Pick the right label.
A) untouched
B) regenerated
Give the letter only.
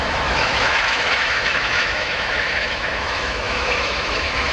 B